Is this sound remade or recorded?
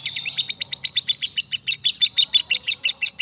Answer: recorded